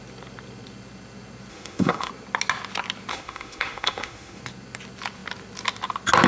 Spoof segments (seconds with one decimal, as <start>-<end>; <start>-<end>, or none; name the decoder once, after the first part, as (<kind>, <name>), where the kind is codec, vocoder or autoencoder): 1.5-2.1 (autoencoder, DAC-VAE); 3.1-4.4